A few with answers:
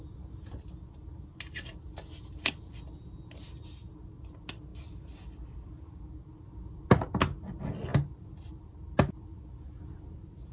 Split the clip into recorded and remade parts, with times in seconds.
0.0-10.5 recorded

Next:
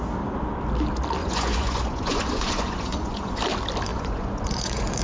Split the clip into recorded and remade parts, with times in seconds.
0.0-1.2 recorded; 1.2-3.4 remade; 3.4-3.9 recorded; 3.9-5.0 remade